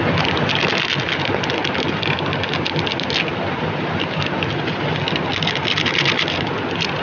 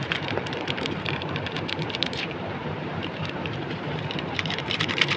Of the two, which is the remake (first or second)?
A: second